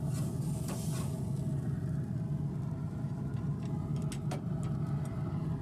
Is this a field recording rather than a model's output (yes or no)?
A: yes